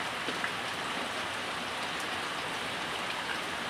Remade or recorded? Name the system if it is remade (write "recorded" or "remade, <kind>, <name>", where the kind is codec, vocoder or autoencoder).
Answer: remade, vocoder, BigVGAN v2